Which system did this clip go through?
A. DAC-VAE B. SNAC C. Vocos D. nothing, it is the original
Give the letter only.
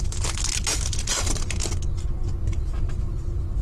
D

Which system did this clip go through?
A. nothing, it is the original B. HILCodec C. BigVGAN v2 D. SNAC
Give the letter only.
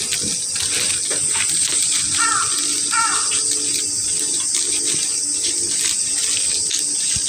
A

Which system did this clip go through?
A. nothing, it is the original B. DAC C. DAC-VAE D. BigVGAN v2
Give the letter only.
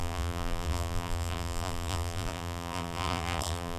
D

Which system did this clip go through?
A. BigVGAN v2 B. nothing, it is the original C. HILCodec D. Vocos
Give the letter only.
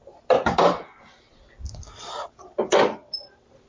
B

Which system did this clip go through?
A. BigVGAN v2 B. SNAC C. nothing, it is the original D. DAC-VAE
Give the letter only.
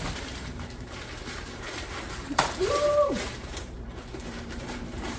A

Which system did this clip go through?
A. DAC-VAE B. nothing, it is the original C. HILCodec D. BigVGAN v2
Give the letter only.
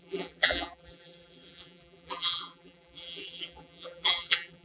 D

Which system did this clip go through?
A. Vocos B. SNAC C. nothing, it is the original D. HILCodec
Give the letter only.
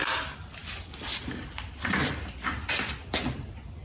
C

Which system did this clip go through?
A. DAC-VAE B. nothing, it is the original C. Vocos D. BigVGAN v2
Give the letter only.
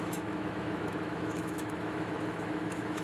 A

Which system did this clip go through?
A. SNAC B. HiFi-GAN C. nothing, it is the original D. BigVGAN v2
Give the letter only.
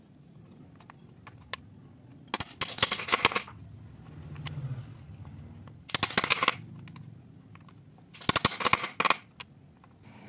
C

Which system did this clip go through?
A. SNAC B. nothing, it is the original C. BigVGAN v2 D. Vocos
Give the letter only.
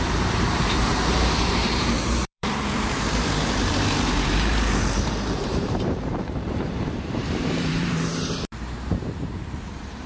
C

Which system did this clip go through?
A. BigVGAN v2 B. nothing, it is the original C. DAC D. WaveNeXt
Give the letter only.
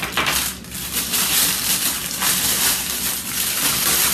B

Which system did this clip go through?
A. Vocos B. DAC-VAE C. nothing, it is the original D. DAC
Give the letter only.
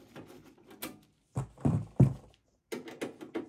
C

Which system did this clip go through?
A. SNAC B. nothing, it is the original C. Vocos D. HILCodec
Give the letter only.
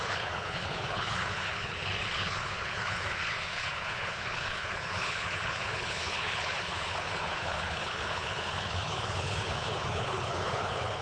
D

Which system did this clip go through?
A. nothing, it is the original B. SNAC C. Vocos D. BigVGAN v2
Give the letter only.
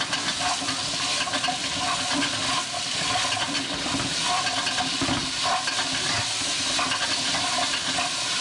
A